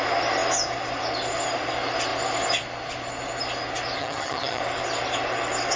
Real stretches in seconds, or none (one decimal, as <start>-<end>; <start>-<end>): 0.0-4.0; 4.6-5.8